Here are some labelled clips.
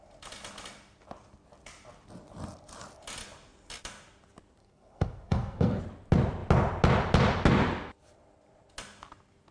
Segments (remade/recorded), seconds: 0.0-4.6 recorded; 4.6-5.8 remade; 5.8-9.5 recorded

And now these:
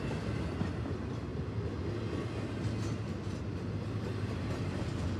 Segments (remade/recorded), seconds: 0.0-5.2 recorded

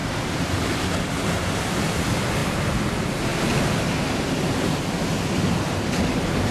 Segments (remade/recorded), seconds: 0.0-0.8 remade; 0.8-6.5 recorded

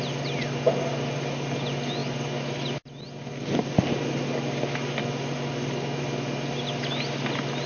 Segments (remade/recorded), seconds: 0.0-7.7 recorded